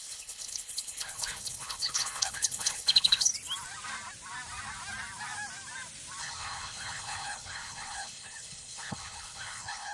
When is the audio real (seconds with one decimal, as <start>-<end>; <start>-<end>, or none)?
3.3-6.2